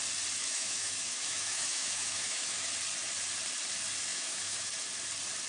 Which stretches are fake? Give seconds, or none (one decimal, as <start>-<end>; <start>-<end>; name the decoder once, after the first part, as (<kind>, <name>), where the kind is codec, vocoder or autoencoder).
0.4-2.7 (autoencoder, DAC-VAE); 4.1-4.7